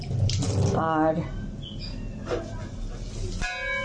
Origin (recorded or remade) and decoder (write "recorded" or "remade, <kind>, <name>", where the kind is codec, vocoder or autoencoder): recorded